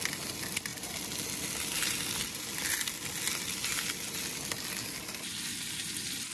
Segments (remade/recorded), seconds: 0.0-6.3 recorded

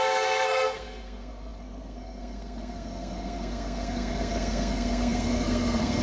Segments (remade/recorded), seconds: 0.0-6.0 remade

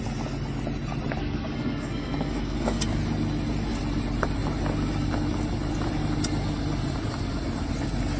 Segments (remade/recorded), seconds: 0.0-1.2 recorded; 1.2-2.8 remade; 2.8-8.2 recorded

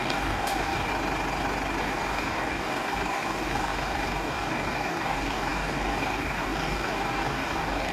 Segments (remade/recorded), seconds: 0.0-0.9 remade; 0.9-1.8 recorded; 1.8-7.9 remade

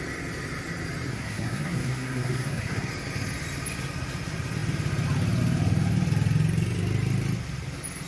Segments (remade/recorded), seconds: 0.0-1.1 recorded; 1.1-2.9 remade; 2.9-8.1 recorded

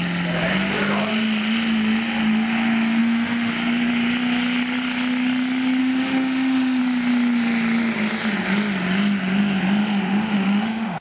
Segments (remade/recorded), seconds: 0.0-3.0 recorded; 3.0-3.5 remade; 3.5-5.8 recorded; 5.8-6.8 remade; 6.8-9.8 recorded; 9.8-11.0 remade

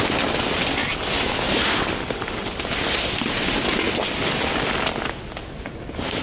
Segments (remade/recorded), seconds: 0.0-6.2 recorded